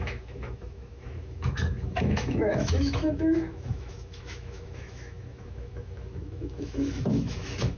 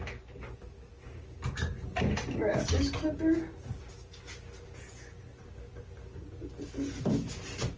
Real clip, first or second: second